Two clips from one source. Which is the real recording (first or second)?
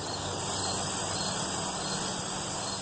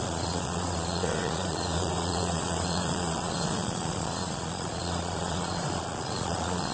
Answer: first